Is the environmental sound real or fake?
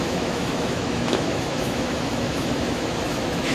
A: fake